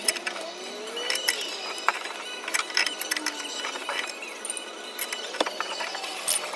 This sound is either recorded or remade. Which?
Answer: recorded